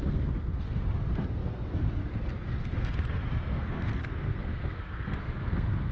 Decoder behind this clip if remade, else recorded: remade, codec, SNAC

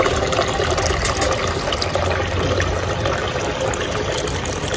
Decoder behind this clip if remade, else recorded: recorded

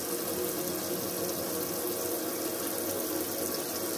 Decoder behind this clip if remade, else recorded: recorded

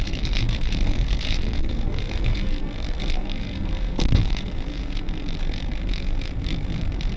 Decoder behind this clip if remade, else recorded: remade, codec, SNAC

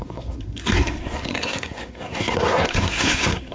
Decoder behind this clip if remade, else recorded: remade, codec, SNAC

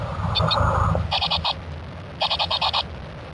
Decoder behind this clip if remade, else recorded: recorded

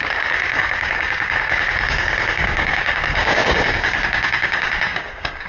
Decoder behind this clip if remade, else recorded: remade, codec, DAC